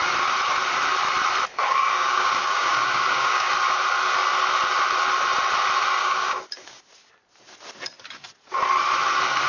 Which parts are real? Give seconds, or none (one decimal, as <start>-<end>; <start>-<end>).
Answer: 0.0-1.5; 3.5-6.0; 6.8-9.5